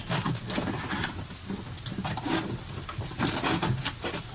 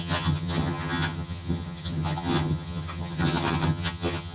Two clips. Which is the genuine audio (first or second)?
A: first